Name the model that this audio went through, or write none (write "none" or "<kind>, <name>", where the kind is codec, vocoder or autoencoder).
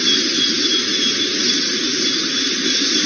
none